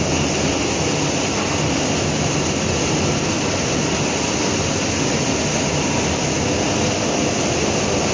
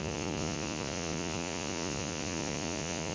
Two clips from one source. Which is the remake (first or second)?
second